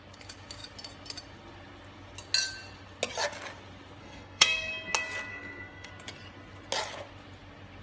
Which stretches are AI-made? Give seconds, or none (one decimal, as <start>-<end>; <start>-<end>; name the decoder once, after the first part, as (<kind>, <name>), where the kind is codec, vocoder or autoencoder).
4.0-4.7 (codec, SNAC); 5.3-5.9